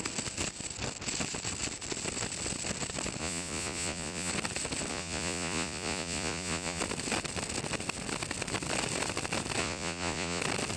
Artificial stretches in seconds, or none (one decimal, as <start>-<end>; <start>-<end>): 3.2-4.3; 4.9-6.8; 9.6-10.4

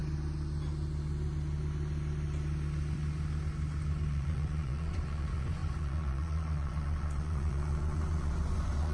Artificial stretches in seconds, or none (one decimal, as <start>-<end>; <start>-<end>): 4.1-8.9

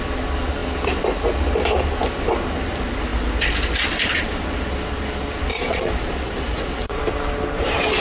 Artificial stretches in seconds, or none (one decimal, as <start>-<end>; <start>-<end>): 5.5-7.0

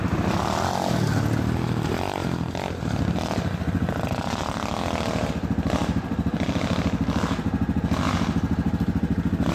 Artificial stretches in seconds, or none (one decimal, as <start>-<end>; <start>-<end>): none

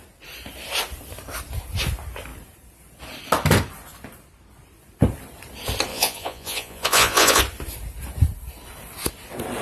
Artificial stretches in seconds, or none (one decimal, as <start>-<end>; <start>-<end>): 5.9-7.4

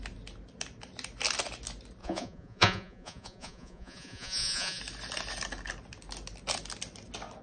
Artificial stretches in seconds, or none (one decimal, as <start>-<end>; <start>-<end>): 2.0-4.8

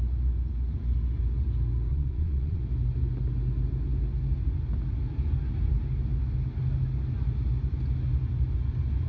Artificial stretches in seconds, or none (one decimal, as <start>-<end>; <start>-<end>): 1.9-2.6

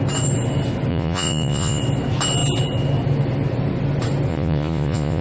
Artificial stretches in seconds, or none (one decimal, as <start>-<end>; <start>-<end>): 0.9-1.8; 4.3-5.2